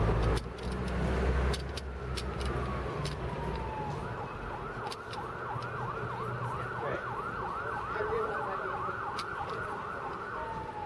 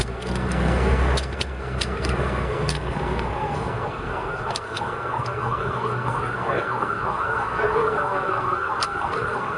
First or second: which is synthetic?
second